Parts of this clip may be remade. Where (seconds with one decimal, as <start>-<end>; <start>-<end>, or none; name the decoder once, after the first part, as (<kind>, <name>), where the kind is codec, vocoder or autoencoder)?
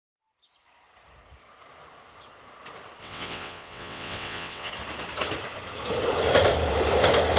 3.0-4.7 (vocoder, WaveNeXt)